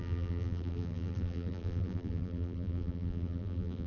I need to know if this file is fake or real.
fake